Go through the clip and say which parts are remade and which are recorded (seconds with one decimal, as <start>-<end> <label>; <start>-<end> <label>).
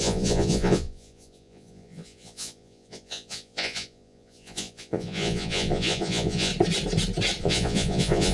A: 0.0-6.5 remade; 6.5-7.4 recorded; 7.4-8.3 remade